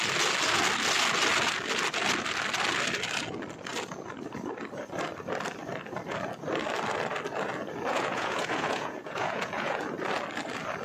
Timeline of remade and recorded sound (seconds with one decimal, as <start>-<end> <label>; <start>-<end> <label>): 0.0-7.9 recorded; 7.9-9.8 remade; 9.8-10.8 recorded